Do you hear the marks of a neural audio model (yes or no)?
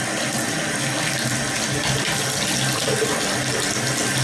no